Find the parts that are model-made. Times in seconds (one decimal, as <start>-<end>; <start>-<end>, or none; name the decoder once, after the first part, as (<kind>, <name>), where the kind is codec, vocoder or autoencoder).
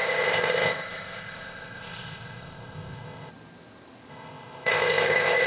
0.0-3.3 (codec, ZipCodec); 4.1-5.5